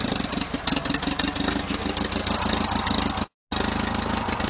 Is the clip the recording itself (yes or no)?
yes